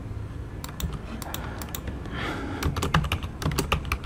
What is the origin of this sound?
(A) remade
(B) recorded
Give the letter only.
B